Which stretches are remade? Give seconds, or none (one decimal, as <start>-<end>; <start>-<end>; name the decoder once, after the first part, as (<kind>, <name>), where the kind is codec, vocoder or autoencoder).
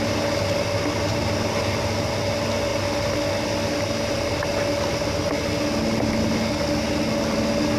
none